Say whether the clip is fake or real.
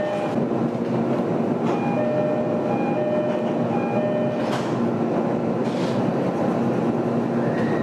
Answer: real